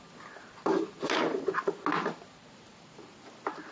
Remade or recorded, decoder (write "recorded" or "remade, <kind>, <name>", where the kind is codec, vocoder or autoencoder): recorded